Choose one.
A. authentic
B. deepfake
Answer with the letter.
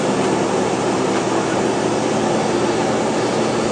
A